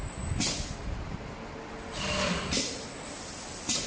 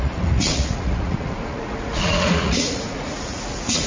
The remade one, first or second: second